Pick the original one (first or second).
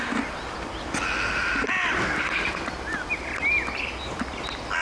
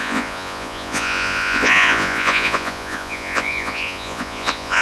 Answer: first